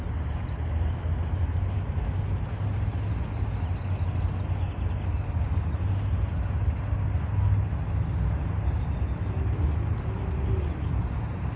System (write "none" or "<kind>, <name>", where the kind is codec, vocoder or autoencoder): none